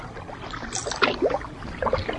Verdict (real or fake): real